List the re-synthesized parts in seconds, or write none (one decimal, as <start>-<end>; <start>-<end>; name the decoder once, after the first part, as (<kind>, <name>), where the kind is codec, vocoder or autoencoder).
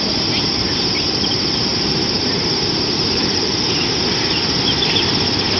1.7-3.5 (vocoder, BigVGAN v2)